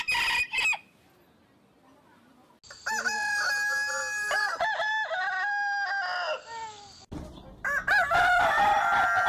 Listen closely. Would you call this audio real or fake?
real